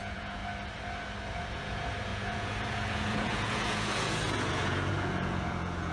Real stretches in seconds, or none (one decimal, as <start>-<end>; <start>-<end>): 0.4-1.5